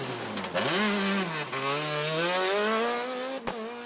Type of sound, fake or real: real